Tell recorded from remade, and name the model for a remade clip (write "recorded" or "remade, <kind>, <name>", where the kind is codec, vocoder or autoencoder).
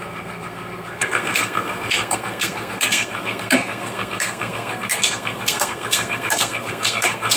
remade, codec, SNAC